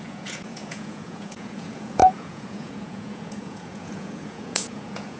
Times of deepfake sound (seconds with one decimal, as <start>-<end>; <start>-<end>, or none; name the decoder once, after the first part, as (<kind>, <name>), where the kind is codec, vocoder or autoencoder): 0.0-5.2 (vocoder, Vocos)